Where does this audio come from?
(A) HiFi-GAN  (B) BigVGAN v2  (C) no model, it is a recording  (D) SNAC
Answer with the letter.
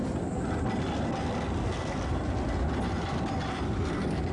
C